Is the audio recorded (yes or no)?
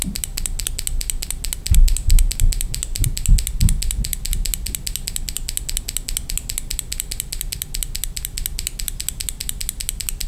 yes